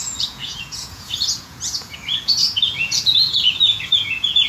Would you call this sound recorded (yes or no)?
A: no